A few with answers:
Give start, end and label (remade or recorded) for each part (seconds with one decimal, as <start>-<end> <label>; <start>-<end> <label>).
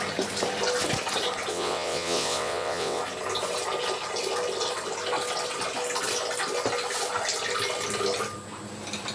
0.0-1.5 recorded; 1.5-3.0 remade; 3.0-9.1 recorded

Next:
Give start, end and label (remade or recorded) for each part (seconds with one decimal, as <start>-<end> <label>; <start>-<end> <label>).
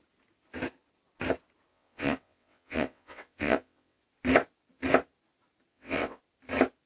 0.0-1.7 recorded; 1.7-4.0 remade; 4.0-5.7 recorded; 5.7-6.2 remade; 6.2-6.9 recorded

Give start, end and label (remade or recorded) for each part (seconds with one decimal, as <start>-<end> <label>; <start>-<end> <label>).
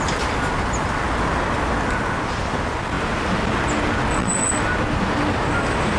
0.0-4.1 recorded; 4.1-4.6 remade; 4.6-6.0 recorded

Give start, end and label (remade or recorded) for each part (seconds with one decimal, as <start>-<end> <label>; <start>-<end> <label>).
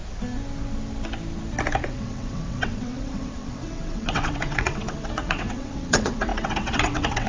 0.0-1.9 recorded; 1.9-7.3 remade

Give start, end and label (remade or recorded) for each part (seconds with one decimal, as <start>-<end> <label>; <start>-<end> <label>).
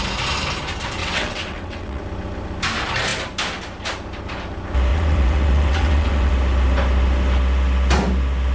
0.0-1.0 recorded; 1.0-2.0 remade; 2.0-4.9 recorded; 4.9-6.3 remade; 6.3-8.5 recorded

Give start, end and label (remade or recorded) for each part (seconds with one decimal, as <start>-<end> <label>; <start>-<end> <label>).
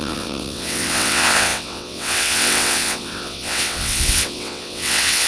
0.0-5.3 remade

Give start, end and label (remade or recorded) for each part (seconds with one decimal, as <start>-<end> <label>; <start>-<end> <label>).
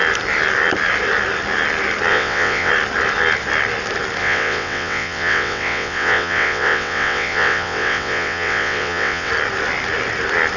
0.0-2.1 recorded; 2.1-2.7 remade; 2.7-4.2 recorded; 4.2-9.3 remade; 9.3-10.6 recorded